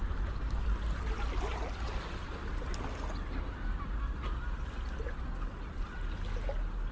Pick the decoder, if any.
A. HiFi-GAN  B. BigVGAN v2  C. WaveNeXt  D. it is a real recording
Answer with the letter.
D